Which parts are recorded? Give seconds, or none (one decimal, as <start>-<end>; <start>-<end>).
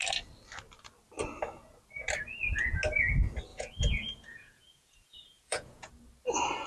0.0-3.5; 5.9-6.7